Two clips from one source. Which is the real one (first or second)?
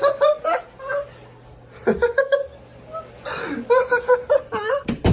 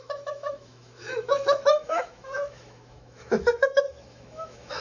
first